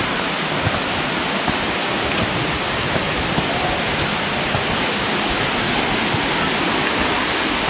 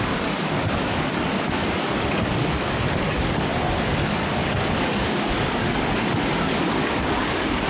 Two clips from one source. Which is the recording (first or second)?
first